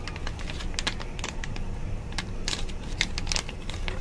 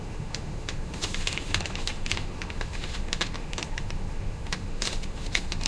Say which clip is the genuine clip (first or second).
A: first